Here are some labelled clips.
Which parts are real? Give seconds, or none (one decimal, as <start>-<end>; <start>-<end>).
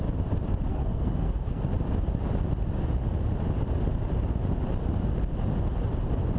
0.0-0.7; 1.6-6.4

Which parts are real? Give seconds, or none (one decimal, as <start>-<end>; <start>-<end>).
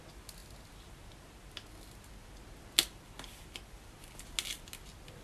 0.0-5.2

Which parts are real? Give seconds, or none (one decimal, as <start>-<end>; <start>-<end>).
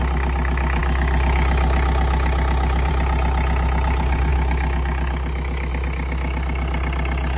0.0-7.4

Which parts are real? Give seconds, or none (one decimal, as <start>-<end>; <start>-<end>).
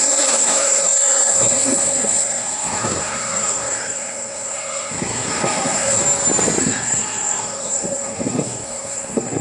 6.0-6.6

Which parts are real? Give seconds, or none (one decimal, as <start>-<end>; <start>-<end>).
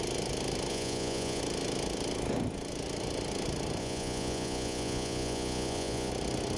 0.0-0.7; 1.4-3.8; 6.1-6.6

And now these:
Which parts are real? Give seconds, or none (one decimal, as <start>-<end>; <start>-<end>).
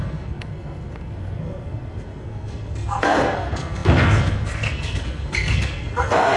none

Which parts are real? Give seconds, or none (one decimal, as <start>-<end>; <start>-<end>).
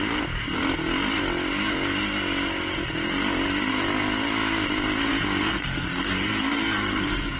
0.0-5.5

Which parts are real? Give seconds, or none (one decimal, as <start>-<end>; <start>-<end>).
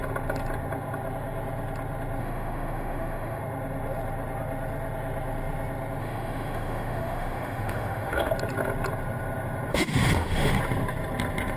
0.0-2.2; 3.4-6.0; 8.3-9.7; 10.6-11.6